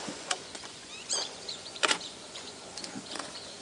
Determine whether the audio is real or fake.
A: fake